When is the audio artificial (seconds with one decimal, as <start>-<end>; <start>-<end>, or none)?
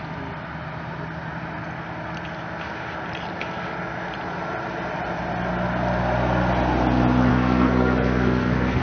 7.3-8.8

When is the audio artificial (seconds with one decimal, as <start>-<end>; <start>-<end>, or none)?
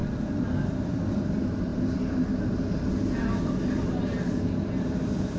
0.7-1.7; 4.9-5.4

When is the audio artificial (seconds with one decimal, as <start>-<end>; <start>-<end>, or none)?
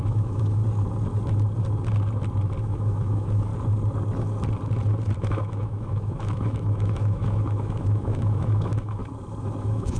0.0-0.6; 2.6-3.5; 5.2-9.0; 9.6-10.0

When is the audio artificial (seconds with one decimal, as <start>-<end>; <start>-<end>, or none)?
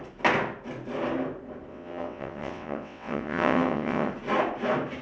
1.7-4.1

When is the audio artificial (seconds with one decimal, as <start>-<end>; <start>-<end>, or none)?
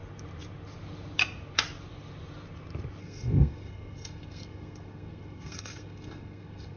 3.0-6.8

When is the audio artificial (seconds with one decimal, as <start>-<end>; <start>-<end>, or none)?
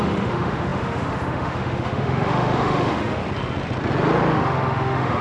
0.0-3.2; 4.3-5.2